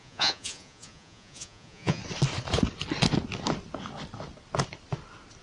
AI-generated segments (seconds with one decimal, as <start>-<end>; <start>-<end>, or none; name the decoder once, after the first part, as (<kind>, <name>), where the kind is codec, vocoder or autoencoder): 0.0-2.0 (vocoder, Vocos)